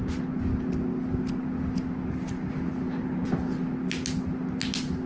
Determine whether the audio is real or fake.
real